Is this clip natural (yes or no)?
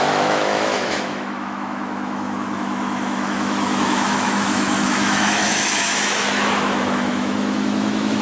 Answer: no